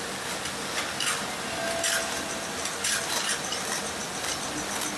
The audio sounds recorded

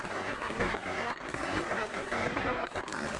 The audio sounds remade